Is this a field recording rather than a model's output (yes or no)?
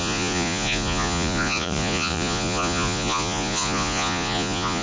no